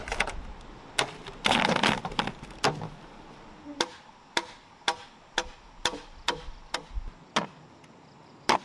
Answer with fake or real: real